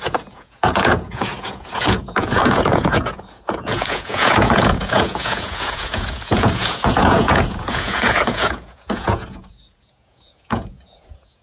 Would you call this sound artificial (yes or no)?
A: yes